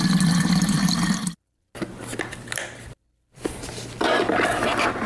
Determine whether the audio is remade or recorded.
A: remade